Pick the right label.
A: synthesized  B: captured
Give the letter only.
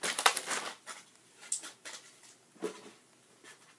B